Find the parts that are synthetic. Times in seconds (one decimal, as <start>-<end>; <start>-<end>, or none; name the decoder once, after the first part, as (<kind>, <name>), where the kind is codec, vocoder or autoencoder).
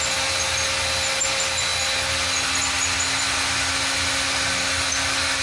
none